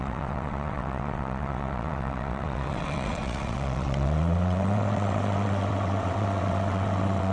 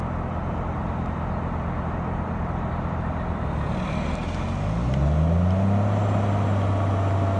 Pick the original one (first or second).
second